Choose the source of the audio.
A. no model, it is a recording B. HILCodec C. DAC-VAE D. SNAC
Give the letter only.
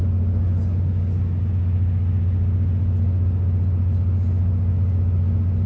A